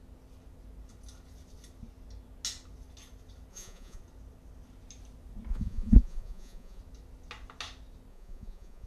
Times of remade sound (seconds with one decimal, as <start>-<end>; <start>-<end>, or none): 3.5-4.0; 5.5-6.8; 8.1-8.9